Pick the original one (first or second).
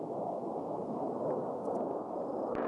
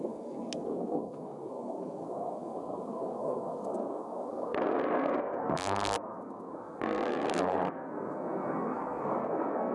first